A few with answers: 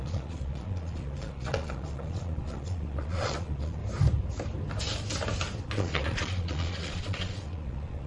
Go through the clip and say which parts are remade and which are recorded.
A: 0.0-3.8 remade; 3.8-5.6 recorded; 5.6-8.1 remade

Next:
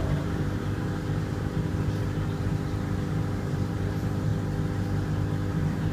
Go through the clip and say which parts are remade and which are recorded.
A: 0.0-4.3 remade; 4.3-5.5 recorded; 5.5-5.9 remade

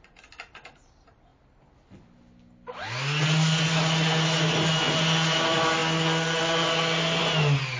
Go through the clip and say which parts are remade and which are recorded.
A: 0.0-7.8 recorded

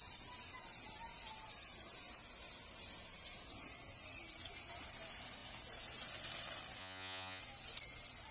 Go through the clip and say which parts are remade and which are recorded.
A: 0.0-6.8 recorded; 6.8-7.4 remade; 7.4-8.3 recorded

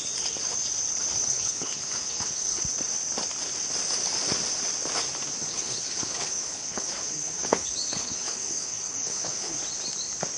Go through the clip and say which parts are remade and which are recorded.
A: 0.0-1.3 recorded; 1.3-2.6 remade; 2.6-5.5 recorded; 5.5-9.6 remade; 9.6-10.4 recorded